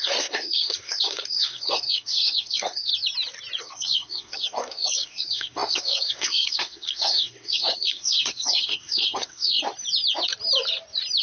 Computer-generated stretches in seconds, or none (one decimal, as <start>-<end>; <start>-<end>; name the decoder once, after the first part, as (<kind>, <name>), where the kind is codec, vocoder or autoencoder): 0.0-2.9 (codec, SNAC); 3.6-9.6